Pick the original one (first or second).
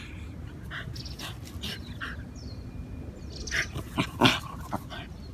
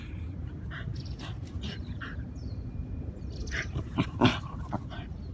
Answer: first